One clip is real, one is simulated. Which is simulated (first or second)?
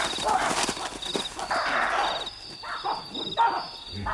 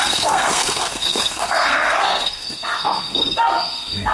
second